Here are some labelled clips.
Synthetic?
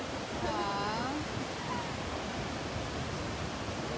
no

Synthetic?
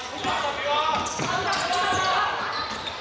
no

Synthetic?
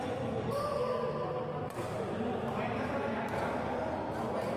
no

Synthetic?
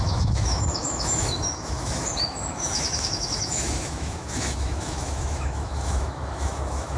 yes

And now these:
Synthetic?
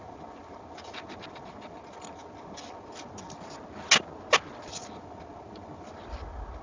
no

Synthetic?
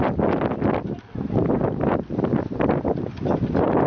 no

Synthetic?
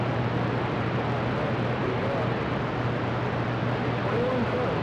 no